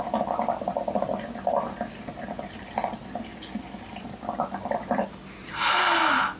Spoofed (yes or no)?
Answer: no